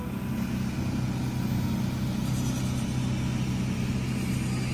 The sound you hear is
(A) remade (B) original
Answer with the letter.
B